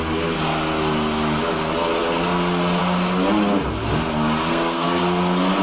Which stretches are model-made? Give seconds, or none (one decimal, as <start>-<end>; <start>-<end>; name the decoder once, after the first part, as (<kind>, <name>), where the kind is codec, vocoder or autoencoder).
4.5-5.0 (codec, SNAC)